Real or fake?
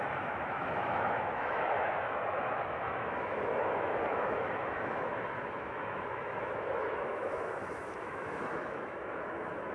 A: fake